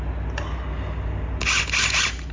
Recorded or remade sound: recorded